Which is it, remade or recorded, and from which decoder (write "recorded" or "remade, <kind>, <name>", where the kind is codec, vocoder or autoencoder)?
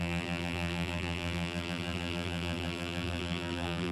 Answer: remade, vocoder, BigVGAN v2